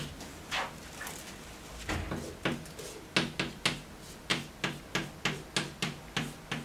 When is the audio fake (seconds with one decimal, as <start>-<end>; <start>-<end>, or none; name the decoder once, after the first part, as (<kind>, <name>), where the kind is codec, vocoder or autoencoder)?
none